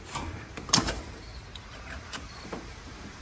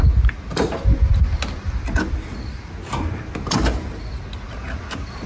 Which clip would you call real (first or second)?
second